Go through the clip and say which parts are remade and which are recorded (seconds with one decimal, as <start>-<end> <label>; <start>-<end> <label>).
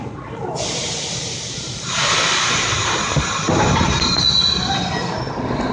0.0-0.8 recorded; 0.8-4.2 remade; 4.2-5.7 recorded